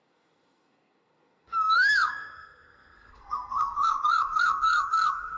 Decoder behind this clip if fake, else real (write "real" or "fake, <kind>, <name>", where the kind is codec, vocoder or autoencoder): fake, codec, SNAC